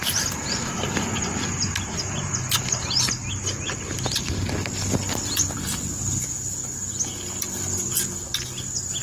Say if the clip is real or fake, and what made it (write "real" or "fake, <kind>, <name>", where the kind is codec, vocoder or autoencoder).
real